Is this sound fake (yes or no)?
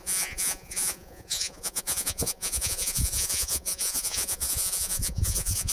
yes